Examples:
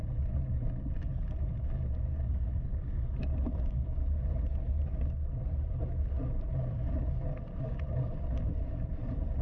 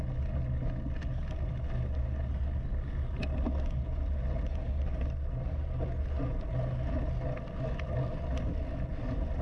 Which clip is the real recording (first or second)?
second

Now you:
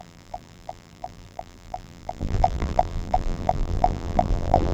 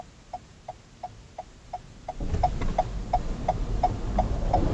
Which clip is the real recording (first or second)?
second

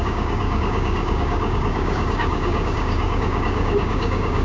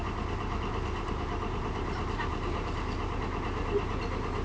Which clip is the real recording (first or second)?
second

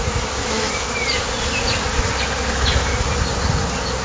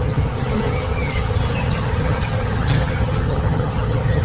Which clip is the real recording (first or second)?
first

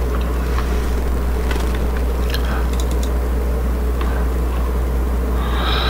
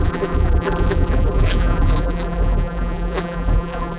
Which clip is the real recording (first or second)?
first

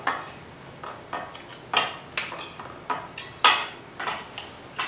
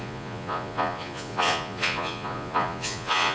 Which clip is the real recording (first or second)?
first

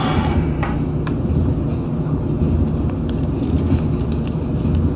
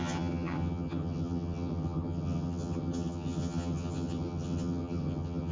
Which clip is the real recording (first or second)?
first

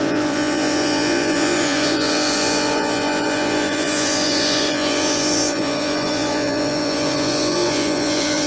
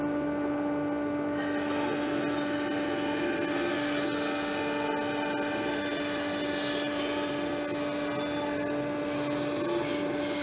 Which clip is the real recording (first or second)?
second